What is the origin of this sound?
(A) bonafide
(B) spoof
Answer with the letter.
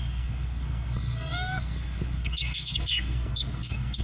B